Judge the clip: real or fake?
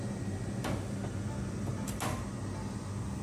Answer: real